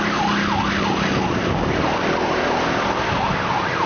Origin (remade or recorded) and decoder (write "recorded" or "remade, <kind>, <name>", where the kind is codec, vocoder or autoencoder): recorded